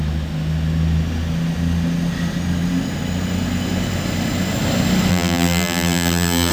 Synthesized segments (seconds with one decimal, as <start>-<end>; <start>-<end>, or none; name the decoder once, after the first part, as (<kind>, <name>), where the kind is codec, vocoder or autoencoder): 5.1-6.5 (vocoder, BigVGAN v2)